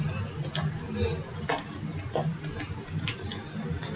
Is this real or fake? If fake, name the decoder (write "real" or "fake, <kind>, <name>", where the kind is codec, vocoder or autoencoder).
real